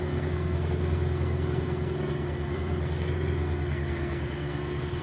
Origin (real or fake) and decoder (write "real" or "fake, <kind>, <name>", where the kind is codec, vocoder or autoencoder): fake, codec, SNAC